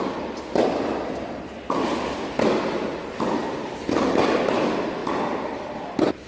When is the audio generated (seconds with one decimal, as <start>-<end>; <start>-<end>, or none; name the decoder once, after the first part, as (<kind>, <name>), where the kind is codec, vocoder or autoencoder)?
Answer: none